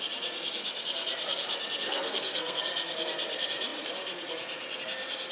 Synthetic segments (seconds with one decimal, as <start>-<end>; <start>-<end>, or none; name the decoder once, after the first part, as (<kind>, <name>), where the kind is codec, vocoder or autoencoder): 1.9-2.6 (codec, SNAC)